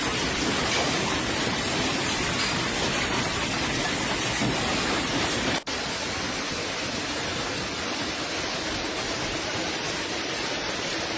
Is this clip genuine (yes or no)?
yes